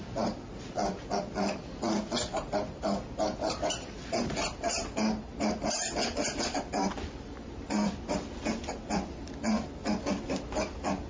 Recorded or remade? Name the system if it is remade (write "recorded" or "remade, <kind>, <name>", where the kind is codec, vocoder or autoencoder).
recorded